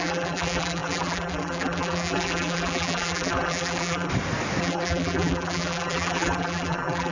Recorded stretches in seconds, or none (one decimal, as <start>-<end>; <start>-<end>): 4.1-4.6